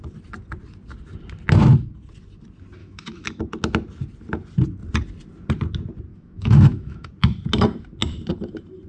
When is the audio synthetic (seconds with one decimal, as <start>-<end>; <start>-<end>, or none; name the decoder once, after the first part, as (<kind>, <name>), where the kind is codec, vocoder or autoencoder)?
2.8-3.4 (autoencoder, DAC-VAE); 6.1-7.1